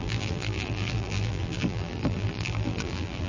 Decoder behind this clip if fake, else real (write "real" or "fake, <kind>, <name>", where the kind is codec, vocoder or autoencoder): fake, vocoder, BigVGAN v2